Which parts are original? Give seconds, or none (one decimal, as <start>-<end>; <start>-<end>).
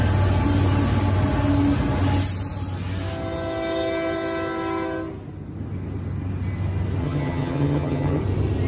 0.0-7.0; 8.2-8.7